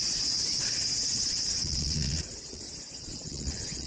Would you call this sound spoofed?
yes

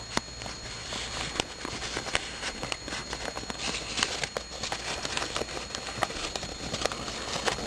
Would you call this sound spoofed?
no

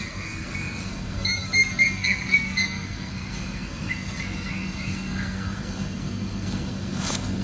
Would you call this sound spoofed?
yes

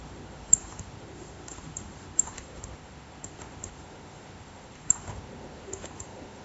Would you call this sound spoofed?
yes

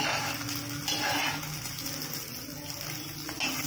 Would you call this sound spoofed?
no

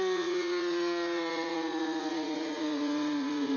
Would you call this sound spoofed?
yes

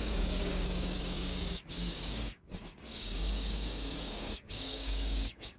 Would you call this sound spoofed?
yes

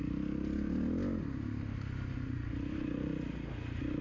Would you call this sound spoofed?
no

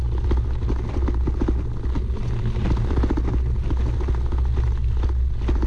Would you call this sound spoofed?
no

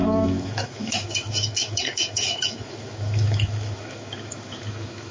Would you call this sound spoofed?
yes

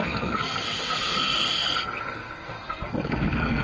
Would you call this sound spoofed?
yes